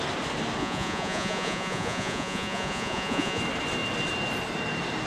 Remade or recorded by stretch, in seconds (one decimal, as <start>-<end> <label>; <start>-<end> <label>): 0.0-0.6 recorded; 0.6-3.4 remade; 3.4-5.1 recorded